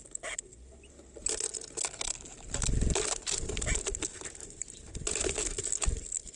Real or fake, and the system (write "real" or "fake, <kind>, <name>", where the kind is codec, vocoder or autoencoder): real